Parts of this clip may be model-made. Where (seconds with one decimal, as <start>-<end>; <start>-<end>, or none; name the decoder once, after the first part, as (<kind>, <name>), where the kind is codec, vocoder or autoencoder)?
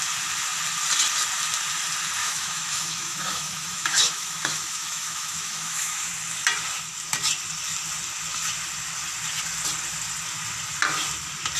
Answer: 2.2-6.1 (autoencoder, DAC-VAE)